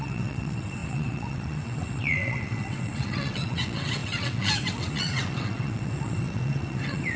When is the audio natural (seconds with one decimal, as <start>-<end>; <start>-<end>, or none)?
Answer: none